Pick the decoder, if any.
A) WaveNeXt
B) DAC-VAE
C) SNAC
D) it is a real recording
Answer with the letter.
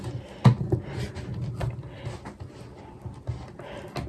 D